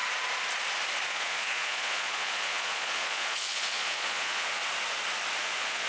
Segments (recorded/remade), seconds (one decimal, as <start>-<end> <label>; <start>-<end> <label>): 0.0-1.1 recorded; 1.1-4.6 remade; 4.6-5.4 recorded; 5.4-5.9 remade

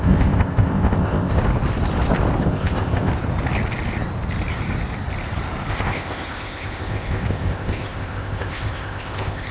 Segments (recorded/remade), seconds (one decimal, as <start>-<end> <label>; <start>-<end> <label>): 0.0-1.4 remade; 1.4-2.4 recorded; 2.4-3.1 remade; 3.1-5.7 recorded; 5.7-9.5 remade

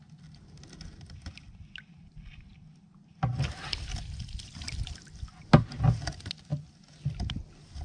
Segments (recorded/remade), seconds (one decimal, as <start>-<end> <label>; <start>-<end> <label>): 0.0-7.8 recorded

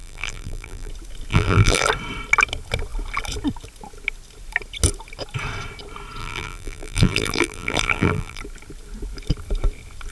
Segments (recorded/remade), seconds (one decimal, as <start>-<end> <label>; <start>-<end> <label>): 0.0-0.9 remade; 0.9-1.3 recorded; 1.3-1.9 remade; 1.9-6.2 recorded; 6.2-8.4 remade; 8.4-10.1 recorded

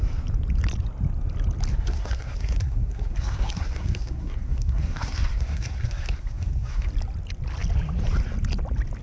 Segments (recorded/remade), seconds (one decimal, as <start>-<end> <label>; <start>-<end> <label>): 0.0-1.7 recorded; 1.7-6.9 remade; 6.9-9.0 recorded